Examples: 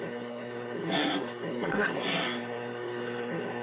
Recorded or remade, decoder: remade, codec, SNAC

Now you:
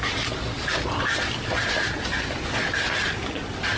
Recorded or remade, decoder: recorded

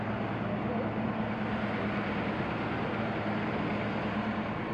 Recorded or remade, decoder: recorded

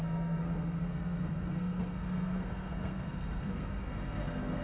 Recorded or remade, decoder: remade, codec, SNAC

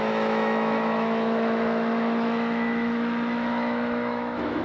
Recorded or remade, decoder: remade, autoencoder, DAC-VAE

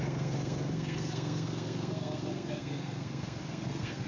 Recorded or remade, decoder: remade, codec, SNAC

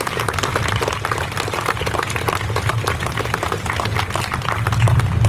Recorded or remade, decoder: recorded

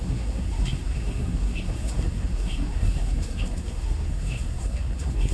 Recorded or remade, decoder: remade, codec, SNAC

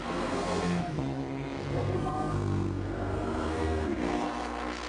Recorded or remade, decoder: remade, codec, SNAC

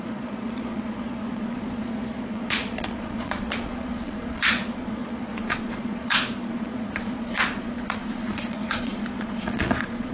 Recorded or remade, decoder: remade, vocoder, Vocos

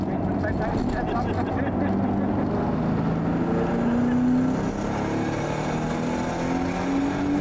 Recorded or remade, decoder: recorded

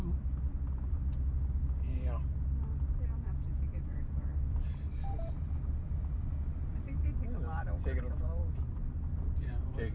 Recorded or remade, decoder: recorded